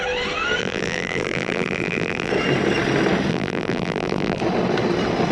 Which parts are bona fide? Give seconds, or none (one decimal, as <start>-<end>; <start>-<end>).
0.0-0.6; 2.3-3.3; 4.4-5.3